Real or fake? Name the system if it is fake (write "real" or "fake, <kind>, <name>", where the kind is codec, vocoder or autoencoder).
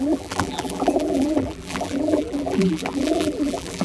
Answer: fake, vocoder, BigVGAN v2